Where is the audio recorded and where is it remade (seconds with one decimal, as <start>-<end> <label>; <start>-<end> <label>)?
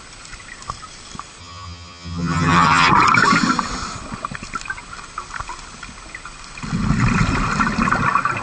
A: 0.0-1.4 recorded; 1.4-2.9 remade; 2.9-8.4 recorded